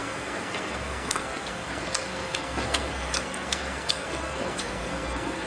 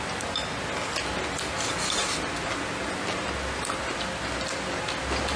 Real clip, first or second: second